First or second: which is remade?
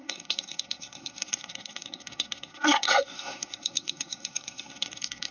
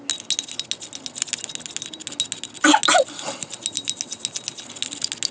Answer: first